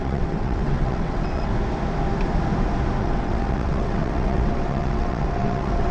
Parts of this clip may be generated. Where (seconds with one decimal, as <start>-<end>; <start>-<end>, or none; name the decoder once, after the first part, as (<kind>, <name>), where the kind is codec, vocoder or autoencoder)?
0.0-1.5 (vocoder, WaveNeXt); 3.0-5.9